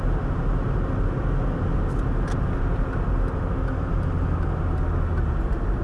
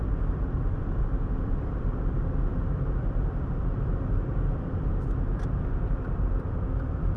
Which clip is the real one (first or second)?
first